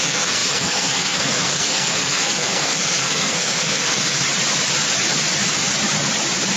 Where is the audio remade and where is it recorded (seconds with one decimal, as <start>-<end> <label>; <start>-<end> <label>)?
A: 0.0-4.2 remade; 4.2-6.6 recorded